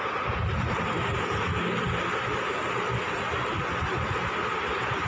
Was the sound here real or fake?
real